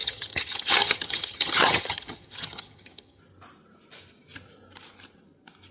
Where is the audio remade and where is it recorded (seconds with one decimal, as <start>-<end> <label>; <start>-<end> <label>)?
0.0-3.2 remade; 3.2-5.7 recorded